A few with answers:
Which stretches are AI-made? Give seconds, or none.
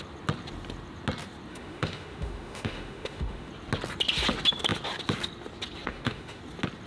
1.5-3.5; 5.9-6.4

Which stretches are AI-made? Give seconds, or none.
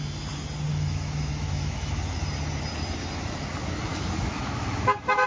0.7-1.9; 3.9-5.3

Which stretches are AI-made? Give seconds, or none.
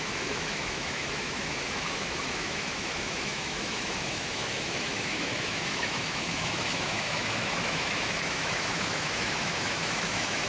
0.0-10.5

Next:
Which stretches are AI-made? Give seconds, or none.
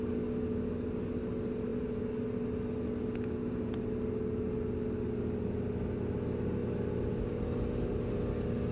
none